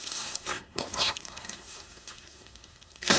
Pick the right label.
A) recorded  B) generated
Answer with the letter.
B